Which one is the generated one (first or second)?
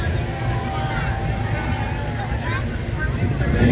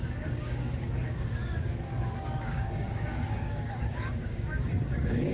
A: second